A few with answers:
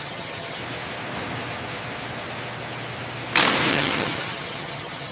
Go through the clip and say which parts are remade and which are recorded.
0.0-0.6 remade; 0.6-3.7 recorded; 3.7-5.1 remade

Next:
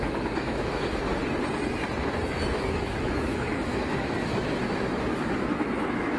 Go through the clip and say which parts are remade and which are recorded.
0.0-1.1 remade; 1.1-2.5 recorded; 2.5-6.2 remade